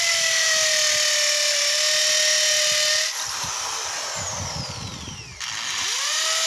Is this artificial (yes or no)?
no